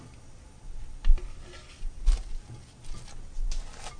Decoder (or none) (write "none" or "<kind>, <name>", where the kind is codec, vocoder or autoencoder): none